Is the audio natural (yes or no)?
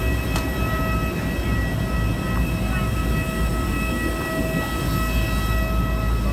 yes